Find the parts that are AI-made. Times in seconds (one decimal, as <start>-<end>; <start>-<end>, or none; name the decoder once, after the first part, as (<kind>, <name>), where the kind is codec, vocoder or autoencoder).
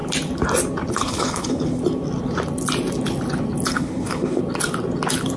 0.9-1.8 (codec, HILCodec); 3.7-4.4